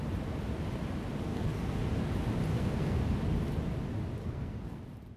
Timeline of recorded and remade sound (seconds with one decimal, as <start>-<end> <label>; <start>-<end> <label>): 0.0-1.3 recorded; 1.3-1.8 remade; 1.8-2.5 recorded; 2.5-3.0 remade; 3.0-4.2 recorded; 4.2-4.8 remade; 4.8-5.2 recorded